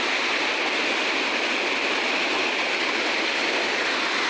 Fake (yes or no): no